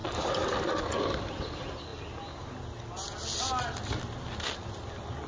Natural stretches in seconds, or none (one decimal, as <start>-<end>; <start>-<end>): 0.0-5.3

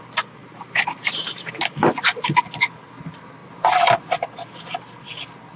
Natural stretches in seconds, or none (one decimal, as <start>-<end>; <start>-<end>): 0.0-0.4; 1.5-3.4; 4.1-5.6